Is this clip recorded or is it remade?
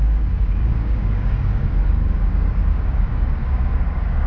remade